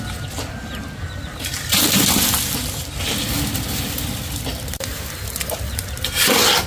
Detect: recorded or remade recorded